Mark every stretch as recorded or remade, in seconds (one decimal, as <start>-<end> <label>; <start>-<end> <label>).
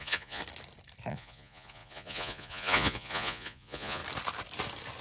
0.0-0.4 remade; 0.4-1.1 recorded; 1.1-4.0 remade; 4.0-5.0 recorded